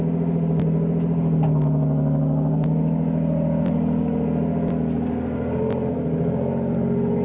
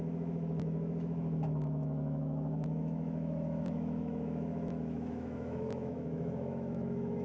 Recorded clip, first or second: first